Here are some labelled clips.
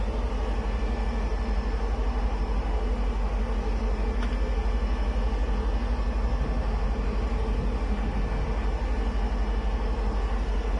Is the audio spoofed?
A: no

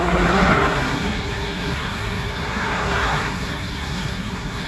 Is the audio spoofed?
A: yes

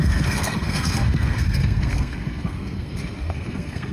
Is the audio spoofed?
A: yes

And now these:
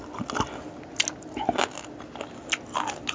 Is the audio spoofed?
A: no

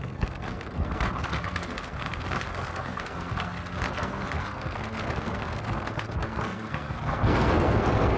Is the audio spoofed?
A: yes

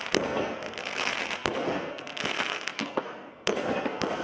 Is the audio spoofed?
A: yes